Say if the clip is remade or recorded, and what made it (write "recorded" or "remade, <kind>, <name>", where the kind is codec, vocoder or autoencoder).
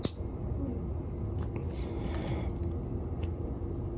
recorded